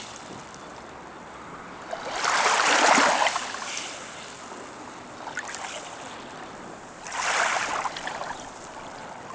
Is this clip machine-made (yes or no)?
no